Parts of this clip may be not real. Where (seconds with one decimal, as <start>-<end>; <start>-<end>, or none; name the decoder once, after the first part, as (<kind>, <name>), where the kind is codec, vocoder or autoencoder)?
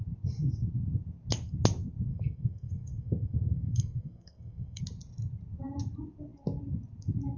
2.1-4.8 (codec, SNAC)